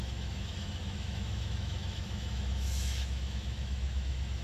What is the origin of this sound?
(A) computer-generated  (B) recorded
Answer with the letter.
A